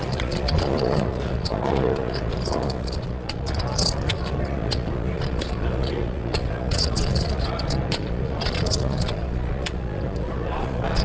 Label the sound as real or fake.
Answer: fake